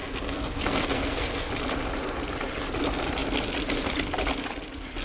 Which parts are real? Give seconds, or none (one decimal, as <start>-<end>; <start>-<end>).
1.5-5.0